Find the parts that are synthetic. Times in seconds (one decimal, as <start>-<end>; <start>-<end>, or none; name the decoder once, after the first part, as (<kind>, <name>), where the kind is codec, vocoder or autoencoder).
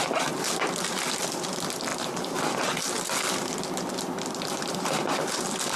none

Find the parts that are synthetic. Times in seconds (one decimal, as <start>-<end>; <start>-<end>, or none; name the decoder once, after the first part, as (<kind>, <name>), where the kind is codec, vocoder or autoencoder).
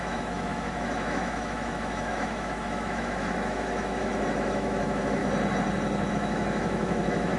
0.0-5.2 (autoencoder, DAC-VAE); 6.1-7.4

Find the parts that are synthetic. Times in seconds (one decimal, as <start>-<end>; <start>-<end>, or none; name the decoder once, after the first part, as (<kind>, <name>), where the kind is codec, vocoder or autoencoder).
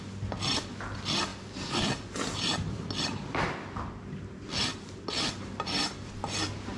none